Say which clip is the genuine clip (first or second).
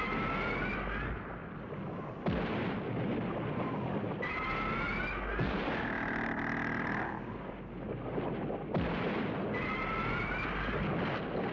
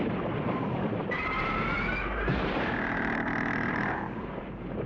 first